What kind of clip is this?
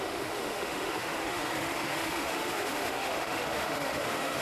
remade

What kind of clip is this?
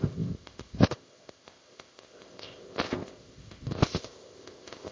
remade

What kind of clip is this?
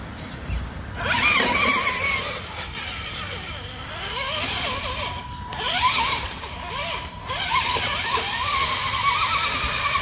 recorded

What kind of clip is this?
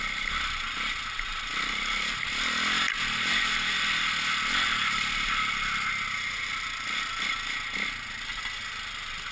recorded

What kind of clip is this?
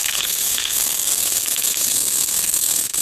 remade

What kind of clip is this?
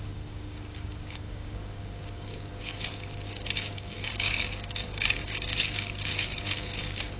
remade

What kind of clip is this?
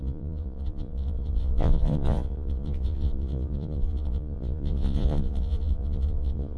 remade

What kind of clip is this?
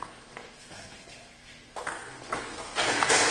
remade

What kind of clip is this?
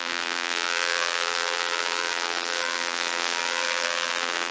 remade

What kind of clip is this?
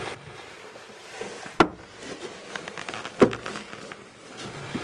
recorded